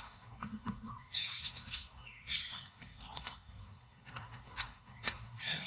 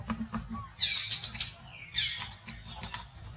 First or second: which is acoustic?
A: second